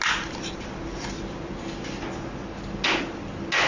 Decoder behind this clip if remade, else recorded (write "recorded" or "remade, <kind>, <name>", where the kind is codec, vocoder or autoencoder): recorded